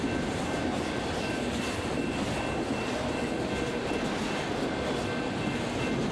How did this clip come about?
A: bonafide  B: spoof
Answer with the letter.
A